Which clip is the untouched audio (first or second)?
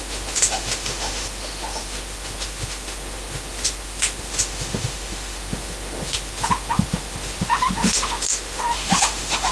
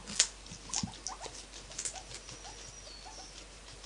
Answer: second